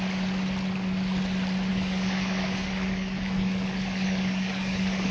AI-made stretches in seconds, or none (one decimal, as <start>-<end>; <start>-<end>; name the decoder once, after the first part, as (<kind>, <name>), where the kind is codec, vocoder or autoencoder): 1.7-5.1 (codec, DAC)